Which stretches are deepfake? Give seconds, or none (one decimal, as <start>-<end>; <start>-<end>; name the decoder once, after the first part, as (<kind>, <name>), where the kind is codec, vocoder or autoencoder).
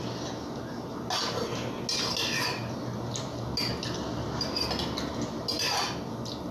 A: none